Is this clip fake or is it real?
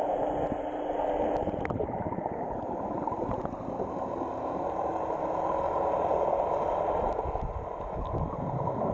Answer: real